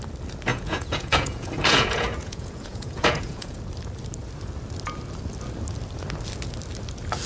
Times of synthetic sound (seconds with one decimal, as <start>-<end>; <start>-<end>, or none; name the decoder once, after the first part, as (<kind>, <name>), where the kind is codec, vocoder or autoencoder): 0.5-3.6 (vocoder, Vocos)